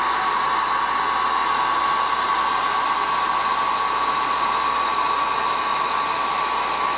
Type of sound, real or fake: real